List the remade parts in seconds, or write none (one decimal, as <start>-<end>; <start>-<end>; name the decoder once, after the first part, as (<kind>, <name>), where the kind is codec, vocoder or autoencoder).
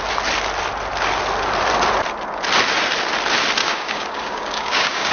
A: 3.6-5.1 (codec, DAC)